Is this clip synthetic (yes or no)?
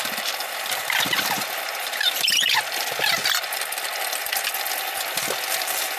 no